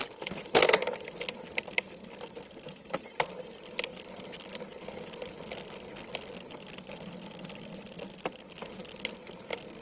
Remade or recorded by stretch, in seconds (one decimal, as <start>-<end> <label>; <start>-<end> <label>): 0.0-9.8 recorded